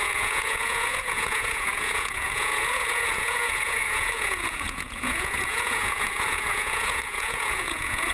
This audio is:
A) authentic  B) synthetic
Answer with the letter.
B